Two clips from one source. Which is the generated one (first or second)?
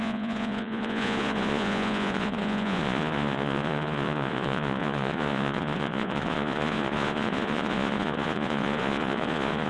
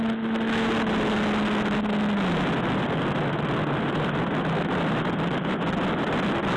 first